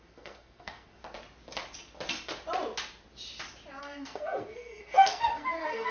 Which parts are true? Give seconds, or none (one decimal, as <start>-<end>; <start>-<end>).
1.0-3.8